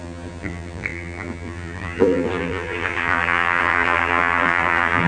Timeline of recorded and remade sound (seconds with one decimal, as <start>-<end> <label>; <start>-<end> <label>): 0.0-5.1 remade